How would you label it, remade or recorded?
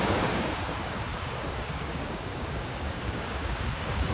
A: remade